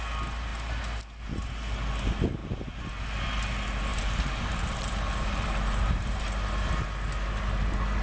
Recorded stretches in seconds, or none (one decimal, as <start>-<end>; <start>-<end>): 0.0-3.9; 6.7-8.0